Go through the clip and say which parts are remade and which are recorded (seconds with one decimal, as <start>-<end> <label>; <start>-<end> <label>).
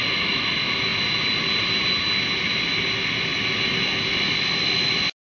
0.0-5.3 recorded